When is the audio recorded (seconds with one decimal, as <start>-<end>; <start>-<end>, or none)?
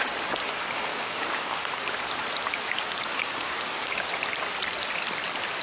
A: 0.0-0.9; 1.6-3.1; 4.1-5.6